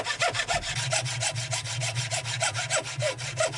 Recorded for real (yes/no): yes